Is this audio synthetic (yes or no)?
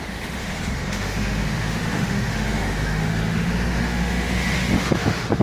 yes